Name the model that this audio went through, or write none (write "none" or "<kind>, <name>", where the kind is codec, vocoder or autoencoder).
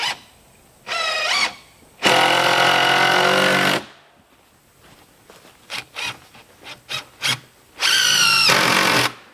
none